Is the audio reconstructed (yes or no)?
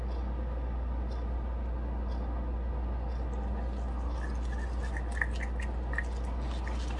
no